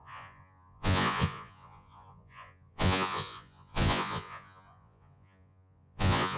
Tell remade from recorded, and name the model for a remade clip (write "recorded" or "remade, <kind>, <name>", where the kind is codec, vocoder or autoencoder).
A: remade, vocoder, Vocos